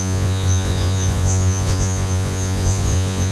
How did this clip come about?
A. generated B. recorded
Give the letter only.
A